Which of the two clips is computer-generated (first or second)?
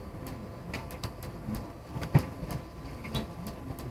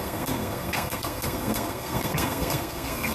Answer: second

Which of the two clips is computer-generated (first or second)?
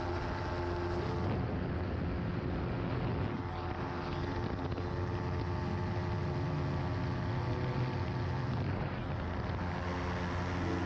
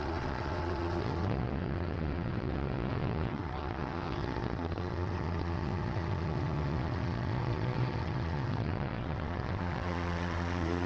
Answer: second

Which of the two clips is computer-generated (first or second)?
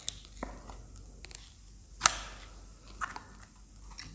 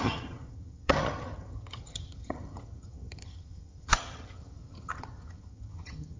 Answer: second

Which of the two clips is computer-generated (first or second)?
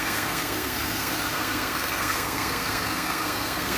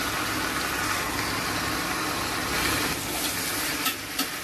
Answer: first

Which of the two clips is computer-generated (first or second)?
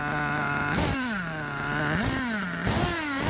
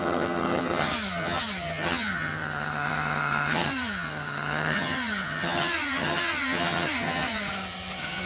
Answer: second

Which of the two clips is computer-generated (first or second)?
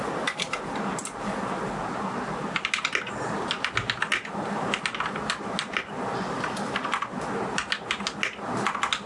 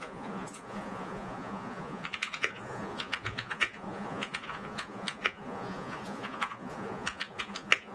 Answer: second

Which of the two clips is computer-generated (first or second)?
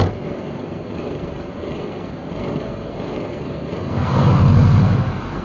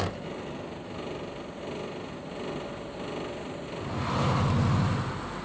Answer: first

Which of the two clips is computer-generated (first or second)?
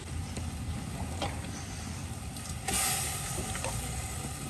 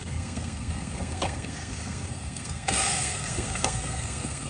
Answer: second